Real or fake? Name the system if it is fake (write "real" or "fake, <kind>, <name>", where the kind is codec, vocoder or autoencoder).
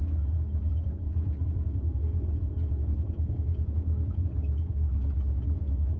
fake, vocoder, Vocos